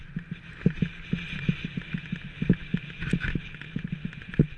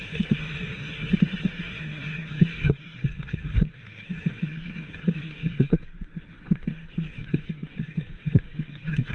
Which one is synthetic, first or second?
second